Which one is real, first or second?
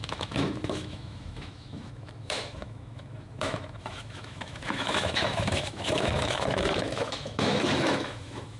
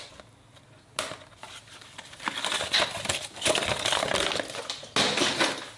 second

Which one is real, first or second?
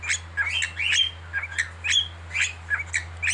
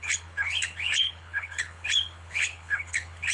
first